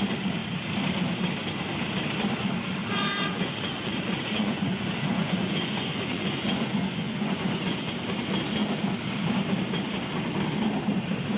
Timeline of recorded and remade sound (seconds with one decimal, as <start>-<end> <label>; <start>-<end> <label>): 0.0-2.8 recorded; 2.8-7.9 remade; 7.9-11.4 recorded